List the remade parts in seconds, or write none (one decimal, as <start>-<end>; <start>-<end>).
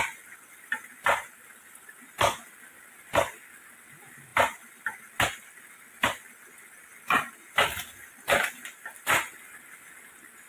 none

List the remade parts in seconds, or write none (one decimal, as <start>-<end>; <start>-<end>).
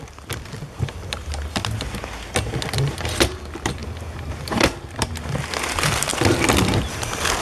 none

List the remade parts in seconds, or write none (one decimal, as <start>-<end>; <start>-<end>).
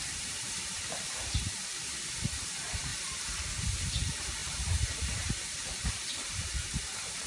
0.0-2.9; 3.7-7.3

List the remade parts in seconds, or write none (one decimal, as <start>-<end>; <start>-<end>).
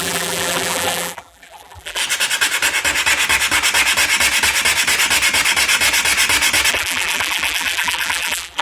0.0-2.0; 6.7-8.6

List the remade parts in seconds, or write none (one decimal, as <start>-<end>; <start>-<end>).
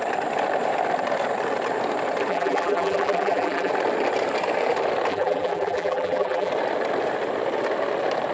2.3-3.7; 5.1-6.5